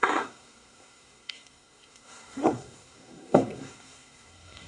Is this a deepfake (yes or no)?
yes